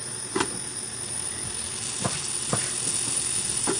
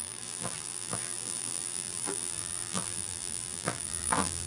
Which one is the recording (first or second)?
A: first